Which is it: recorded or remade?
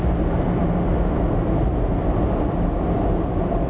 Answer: recorded